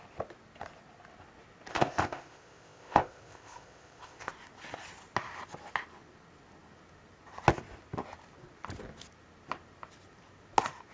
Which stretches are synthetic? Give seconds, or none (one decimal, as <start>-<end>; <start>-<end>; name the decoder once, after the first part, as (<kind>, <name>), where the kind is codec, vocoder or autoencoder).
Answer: 1.7-4.3 (codec, ZipCodec)